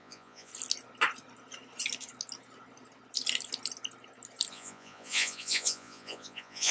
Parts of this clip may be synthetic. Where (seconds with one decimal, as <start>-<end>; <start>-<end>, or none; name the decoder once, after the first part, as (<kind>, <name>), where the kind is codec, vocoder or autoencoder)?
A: 0.0-0.5 (vocoder, Vocos); 4.5-6.7